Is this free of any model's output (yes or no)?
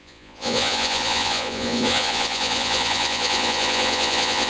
no